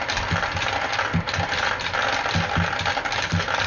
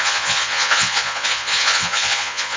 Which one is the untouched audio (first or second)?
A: first